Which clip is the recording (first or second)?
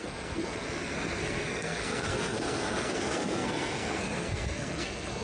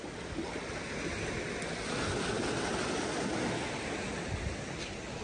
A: second